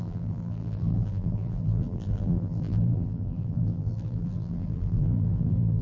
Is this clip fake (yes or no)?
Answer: yes